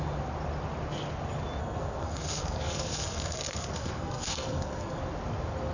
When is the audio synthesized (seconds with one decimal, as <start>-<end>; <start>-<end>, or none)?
1.6-5.0

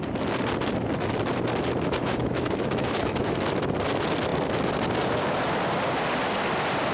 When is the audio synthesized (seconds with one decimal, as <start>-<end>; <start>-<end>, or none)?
2.0-3.4

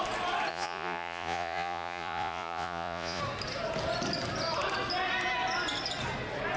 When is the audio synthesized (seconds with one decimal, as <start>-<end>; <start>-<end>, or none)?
0.5-3.2